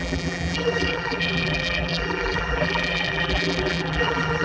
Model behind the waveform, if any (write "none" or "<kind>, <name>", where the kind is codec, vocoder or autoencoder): vocoder, BigVGAN v2